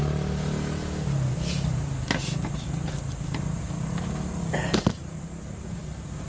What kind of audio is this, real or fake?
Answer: real